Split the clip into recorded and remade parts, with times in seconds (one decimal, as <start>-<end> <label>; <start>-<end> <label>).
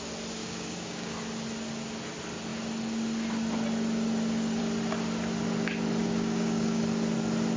0.0-0.4 recorded; 0.4-1.1 remade; 1.1-6.0 recorded; 6.0-6.8 remade; 6.8-7.6 recorded